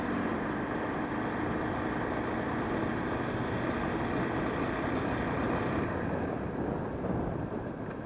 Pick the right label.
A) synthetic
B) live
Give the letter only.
B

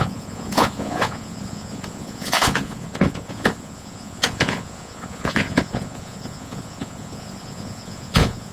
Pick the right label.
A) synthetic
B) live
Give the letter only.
A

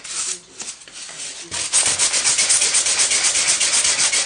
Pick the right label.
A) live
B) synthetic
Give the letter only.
A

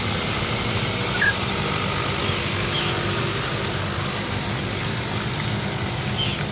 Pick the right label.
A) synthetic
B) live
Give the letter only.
B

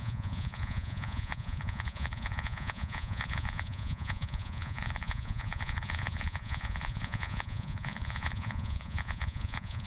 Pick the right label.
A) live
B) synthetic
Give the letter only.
B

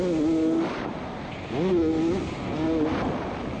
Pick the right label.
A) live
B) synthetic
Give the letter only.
A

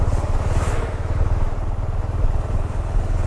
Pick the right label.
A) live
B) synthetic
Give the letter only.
A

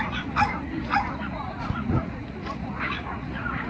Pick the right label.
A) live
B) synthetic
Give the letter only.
B